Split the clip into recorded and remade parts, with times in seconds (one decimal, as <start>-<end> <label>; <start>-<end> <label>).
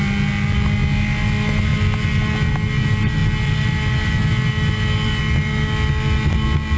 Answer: 0.0-6.8 recorded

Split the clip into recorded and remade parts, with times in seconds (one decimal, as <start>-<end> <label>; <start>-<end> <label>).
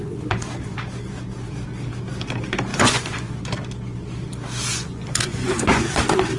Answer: 0.0-0.8 remade; 0.8-2.7 recorded; 2.7-3.3 remade; 3.3-4.7 recorded; 4.7-6.0 remade; 6.0-6.4 recorded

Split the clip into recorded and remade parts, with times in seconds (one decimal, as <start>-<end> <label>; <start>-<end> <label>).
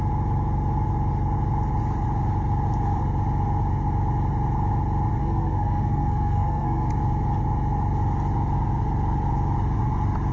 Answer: 0.0-5.2 recorded; 5.2-6.9 remade; 6.9-10.3 recorded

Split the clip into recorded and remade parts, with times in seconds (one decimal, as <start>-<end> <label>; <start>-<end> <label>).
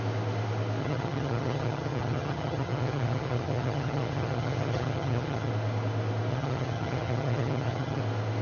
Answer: 0.0-0.8 recorded; 0.8-5.5 remade; 5.5-6.3 recorded; 6.3-8.0 remade; 8.0-8.4 recorded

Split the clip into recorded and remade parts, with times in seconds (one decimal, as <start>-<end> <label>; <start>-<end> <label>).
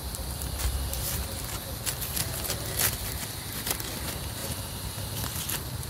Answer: 0.0-5.9 recorded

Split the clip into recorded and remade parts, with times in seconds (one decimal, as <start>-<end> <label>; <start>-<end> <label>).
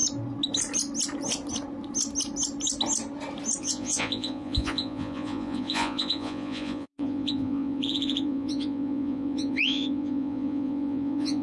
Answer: 0.0-3.6 recorded; 3.6-11.4 remade